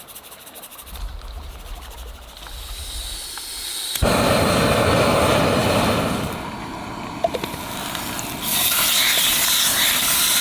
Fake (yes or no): no